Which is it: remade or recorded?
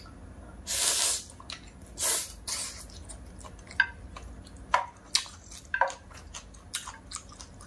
recorded